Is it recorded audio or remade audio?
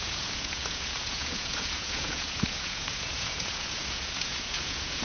remade